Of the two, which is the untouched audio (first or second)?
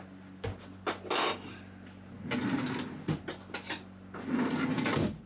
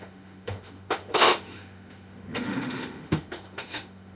first